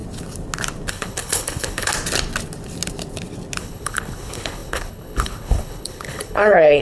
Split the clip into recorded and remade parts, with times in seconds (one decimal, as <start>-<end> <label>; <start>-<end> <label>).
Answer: 0.0-0.9 recorded; 0.9-1.9 remade; 1.9-3.6 recorded; 3.6-6.8 remade